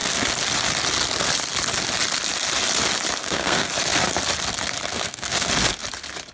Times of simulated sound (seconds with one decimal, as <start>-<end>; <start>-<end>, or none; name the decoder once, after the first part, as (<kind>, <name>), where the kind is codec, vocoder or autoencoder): 3.2-3.7 (codec, SNAC); 4.9-5.5